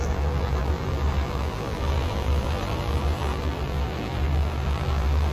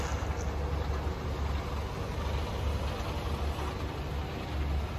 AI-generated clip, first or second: first